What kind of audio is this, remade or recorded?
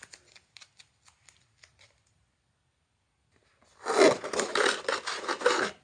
recorded